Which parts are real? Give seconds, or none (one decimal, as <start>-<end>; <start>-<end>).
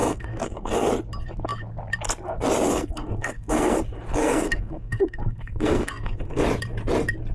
0.9-2.7; 3.8-4.2; 6.4-7.3